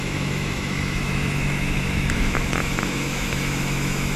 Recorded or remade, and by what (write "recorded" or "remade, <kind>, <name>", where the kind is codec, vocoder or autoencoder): remade, autoencoder, DAC-VAE